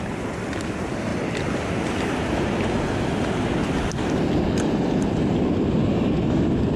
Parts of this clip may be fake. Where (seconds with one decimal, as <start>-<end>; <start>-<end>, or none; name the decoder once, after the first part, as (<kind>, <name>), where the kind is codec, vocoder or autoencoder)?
none